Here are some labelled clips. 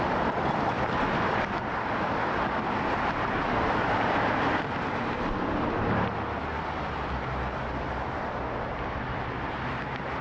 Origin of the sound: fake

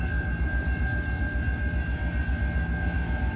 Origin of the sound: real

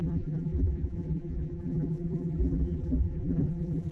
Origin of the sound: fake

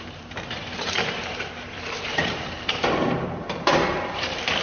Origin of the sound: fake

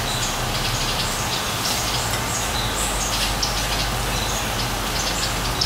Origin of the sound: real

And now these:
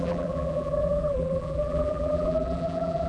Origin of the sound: fake